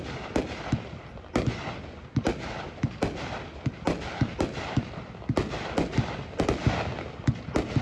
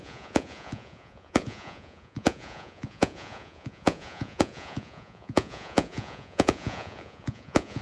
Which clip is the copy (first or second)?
second